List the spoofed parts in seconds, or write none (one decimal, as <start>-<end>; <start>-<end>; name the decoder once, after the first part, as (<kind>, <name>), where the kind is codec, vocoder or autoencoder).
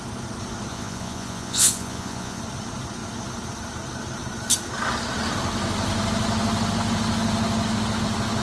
0.7-2.4 (vocoder, Vocos)